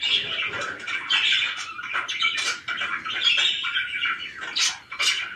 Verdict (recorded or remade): recorded